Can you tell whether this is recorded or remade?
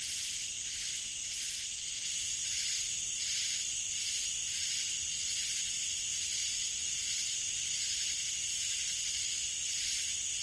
recorded